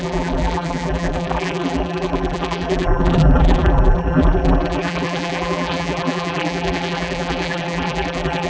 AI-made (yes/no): yes